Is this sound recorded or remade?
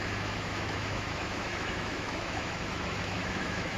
remade